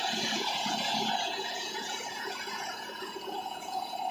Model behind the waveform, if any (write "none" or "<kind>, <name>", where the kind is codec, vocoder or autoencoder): vocoder, Vocos